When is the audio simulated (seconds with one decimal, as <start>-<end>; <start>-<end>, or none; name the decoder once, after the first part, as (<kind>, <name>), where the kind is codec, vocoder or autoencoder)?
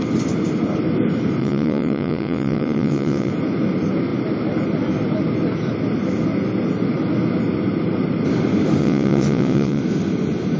1.4-3.3 (vocoder, WaveNeXt); 8.8-9.8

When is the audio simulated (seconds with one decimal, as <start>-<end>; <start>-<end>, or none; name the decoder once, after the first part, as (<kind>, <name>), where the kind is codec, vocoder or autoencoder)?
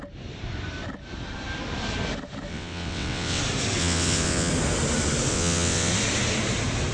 2.5-3.4 (vocoder, WaveNeXt); 3.8-4.5; 5.3-5.9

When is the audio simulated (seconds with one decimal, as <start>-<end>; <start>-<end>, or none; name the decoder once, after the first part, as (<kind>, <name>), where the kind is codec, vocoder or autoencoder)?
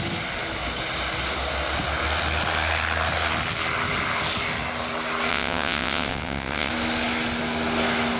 5.3-6.7 (vocoder, WaveNeXt)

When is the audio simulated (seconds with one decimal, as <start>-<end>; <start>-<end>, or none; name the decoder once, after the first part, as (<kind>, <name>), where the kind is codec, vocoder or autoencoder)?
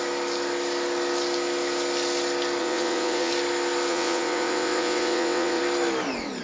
2.6-3.3 (vocoder, WaveNeXt); 3.9-5.6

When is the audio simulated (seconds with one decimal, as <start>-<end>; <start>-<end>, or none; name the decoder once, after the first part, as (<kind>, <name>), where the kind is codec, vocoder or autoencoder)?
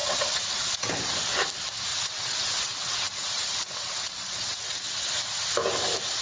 0.0-0.9 (vocoder, WaveNeXt); 1.9-5.1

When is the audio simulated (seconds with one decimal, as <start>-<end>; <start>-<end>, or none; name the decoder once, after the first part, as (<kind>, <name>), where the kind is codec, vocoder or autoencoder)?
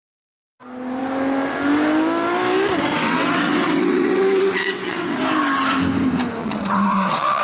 2.9-5.2 (vocoder, WaveNeXt); 6.4-7.4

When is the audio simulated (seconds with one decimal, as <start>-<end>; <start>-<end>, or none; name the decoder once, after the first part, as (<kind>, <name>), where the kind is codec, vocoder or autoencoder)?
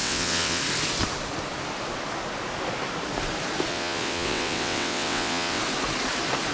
0.0-0.6 (vocoder, WaveNeXt); 3.7-5.6